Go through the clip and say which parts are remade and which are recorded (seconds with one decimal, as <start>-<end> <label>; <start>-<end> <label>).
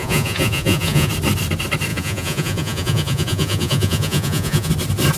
0.0-1.1 remade; 1.1-1.9 recorded; 1.9-4.7 remade; 4.7-5.2 recorded